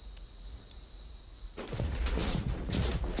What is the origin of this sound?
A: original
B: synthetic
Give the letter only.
B